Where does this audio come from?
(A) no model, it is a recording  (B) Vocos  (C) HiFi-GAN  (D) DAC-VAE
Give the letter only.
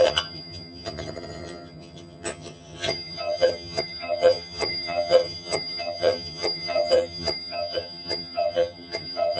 C